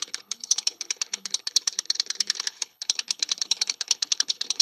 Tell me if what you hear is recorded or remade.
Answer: remade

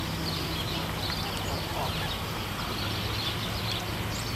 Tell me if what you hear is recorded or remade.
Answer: recorded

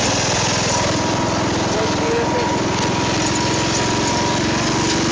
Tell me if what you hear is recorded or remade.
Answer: recorded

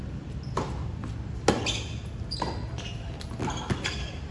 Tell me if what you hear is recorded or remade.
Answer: recorded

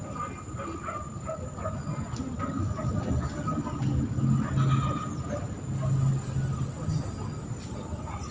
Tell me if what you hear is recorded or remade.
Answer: recorded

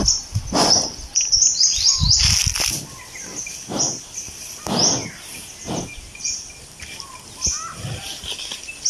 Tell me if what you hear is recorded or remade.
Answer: recorded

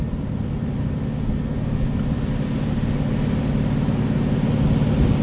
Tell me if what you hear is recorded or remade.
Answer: recorded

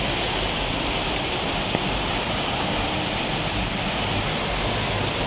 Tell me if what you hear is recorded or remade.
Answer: remade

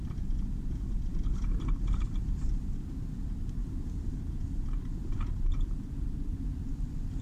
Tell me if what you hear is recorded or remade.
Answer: remade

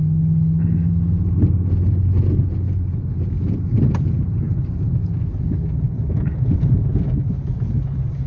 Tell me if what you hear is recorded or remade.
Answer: recorded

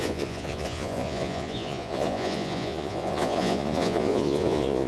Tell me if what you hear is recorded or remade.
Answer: remade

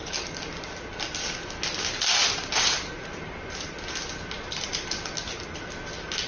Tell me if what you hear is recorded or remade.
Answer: recorded